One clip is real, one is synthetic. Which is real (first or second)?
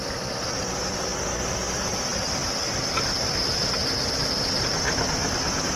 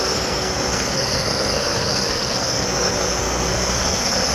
first